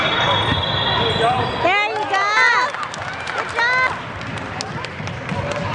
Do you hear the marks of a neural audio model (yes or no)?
no